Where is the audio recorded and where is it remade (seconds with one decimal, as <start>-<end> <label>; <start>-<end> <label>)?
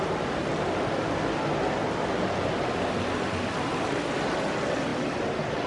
0.0-4.9 recorded; 4.9-5.7 remade